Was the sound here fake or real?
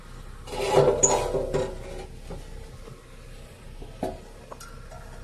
real